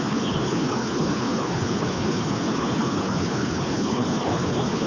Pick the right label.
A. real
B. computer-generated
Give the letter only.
B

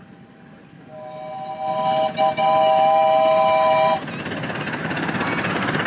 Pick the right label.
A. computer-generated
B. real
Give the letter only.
B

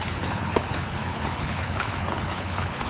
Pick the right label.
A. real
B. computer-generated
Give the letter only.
B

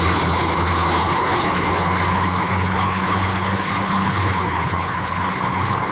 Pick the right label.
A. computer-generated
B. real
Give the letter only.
A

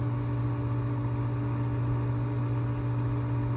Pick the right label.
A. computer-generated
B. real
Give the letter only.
B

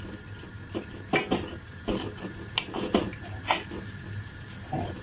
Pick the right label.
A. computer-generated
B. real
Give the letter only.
B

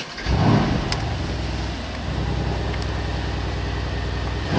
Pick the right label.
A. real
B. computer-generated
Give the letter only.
A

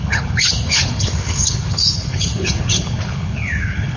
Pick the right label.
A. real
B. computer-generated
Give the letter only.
B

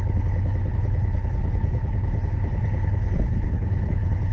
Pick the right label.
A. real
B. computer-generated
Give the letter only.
B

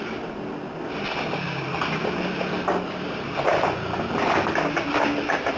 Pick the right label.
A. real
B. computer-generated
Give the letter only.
A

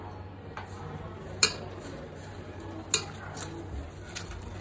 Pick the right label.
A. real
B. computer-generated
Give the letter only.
A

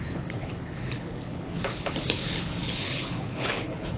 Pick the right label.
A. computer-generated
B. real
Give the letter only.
A